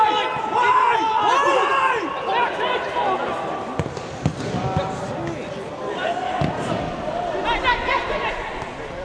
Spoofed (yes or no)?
no